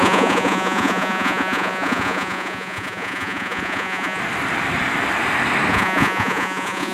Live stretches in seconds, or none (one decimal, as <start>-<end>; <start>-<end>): 4.2-5.7